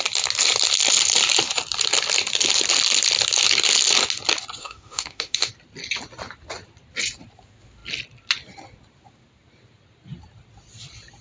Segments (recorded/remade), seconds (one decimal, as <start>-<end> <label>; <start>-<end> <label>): 0.0-4.6 recorded; 4.6-5.5 remade; 5.5-11.2 recorded